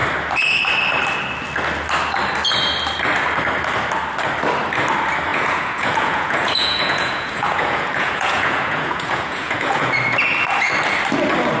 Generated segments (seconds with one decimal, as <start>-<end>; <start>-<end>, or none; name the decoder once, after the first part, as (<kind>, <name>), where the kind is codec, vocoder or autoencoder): 5.3-9.9 (vocoder, Vocos)